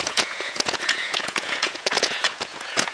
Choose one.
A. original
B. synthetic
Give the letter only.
B